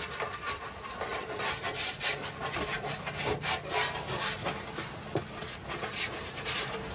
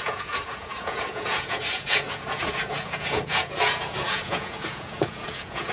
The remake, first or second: second